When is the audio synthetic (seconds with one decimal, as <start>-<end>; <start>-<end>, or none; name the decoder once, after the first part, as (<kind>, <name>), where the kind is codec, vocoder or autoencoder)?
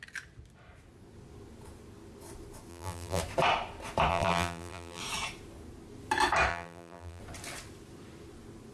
2.7-3.2 (vocoder, BigVGAN v2); 4.1-5.0; 6.5-7.2